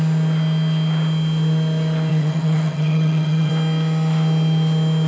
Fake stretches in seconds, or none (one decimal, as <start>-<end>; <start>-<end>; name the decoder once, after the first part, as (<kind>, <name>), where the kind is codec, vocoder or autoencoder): 2.1-3.5 (vocoder, HiFi-GAN)